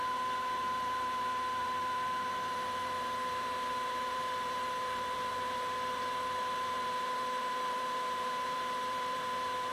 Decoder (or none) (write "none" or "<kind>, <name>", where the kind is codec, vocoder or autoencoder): vocoder, BigVGAN v2